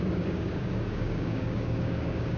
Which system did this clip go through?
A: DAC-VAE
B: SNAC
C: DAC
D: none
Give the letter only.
C